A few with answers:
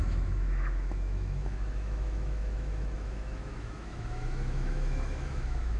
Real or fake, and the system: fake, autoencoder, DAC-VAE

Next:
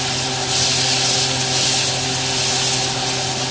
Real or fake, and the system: real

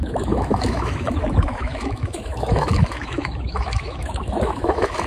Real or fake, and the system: fake, autoencoder, DAC-VAE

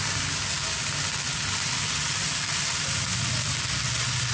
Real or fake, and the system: real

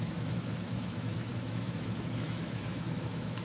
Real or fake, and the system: fake, autoencoder, DAC-VAE